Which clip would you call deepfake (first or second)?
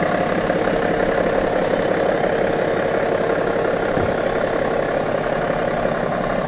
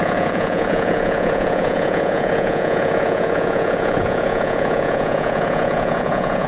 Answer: second